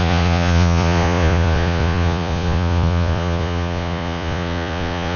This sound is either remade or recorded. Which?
remade